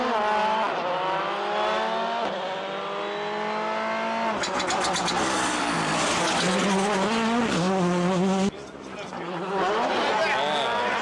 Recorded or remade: recorded